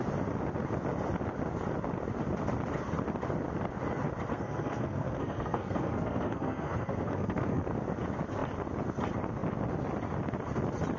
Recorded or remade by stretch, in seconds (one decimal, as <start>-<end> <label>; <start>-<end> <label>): 0.0-4.3 recorded; 4.3-7.6 remade; 7.6-11.0 recorded